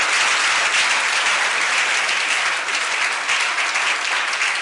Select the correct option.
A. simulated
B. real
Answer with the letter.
B